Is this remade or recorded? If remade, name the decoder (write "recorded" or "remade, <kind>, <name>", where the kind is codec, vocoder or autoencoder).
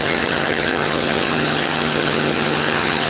remade, vocoder, HiFi-GAN